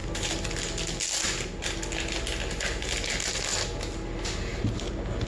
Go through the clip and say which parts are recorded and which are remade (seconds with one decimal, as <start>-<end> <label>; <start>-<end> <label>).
0.0-5.3 recorded